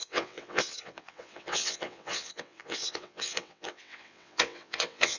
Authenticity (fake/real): fake